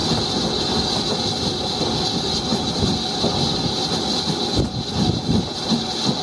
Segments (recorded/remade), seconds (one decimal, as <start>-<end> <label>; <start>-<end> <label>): 0.0-6.2 recorded